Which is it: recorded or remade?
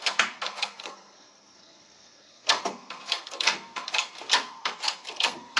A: remade